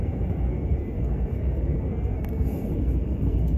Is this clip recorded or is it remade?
remade